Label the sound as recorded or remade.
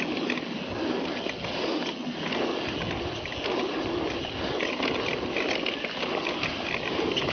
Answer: recorded